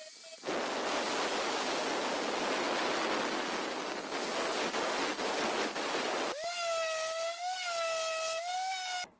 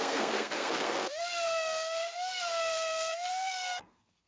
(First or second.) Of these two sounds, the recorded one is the first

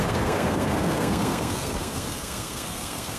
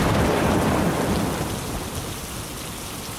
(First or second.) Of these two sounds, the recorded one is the second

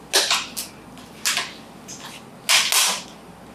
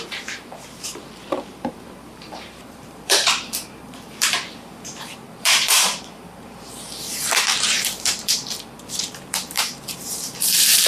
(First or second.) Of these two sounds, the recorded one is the first